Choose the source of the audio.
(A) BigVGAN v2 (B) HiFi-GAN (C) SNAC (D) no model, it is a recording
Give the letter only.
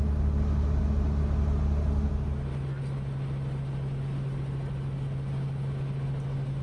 D